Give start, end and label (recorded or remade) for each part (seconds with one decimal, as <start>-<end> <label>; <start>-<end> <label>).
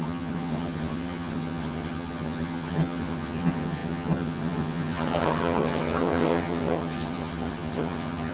0.0-8.3 remade